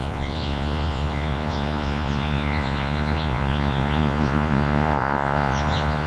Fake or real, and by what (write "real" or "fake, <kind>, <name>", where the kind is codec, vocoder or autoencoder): fake, vocoder, Vocos